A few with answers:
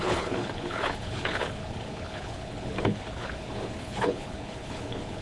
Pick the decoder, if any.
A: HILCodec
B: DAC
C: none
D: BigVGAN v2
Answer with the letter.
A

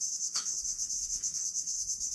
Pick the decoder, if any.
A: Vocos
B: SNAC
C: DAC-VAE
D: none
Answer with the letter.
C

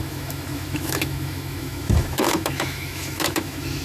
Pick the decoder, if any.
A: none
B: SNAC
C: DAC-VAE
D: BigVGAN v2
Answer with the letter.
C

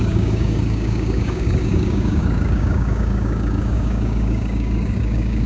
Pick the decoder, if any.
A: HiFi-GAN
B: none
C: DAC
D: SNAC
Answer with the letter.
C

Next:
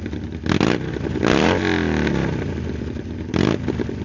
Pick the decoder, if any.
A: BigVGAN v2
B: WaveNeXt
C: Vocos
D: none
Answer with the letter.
D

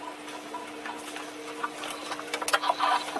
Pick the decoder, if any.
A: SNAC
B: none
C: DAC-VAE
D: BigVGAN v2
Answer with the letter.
B